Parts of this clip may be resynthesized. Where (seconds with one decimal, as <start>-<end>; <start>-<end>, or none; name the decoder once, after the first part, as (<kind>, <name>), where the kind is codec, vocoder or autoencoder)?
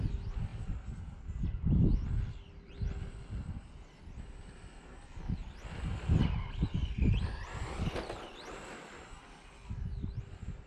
none